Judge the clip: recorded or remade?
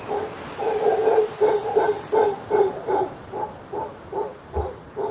recorded